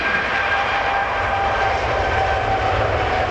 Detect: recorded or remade remade